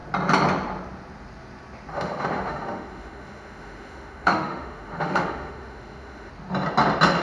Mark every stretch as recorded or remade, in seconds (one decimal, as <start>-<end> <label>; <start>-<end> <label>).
0.0-1.9 recorded; 1.9-6.3 remade; 6.3-7.2 recorded